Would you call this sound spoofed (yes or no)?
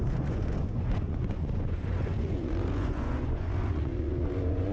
yes